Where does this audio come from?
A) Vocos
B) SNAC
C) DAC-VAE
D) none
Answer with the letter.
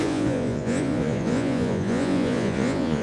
A